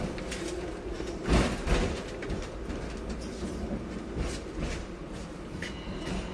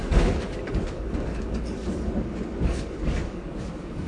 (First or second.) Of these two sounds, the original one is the first